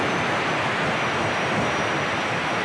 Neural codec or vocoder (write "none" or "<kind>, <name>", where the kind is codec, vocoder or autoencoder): none